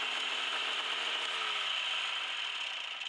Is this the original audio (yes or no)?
yes